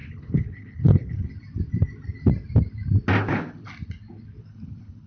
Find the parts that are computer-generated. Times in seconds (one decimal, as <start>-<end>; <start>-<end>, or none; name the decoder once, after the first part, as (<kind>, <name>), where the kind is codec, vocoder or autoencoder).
0.0-1.3 (codec, HILCodec); 3.2-3.7; 4.4-5.1